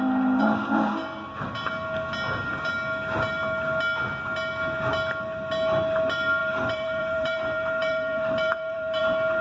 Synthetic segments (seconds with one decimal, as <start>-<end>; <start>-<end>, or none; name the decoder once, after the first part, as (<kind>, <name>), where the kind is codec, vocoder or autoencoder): 6.4-9.0 (vocoder, BigVGAN v2)